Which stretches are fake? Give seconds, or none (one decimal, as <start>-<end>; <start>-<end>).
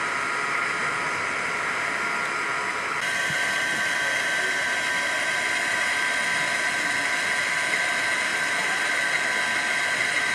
0.8-1.9; 8.3-8.9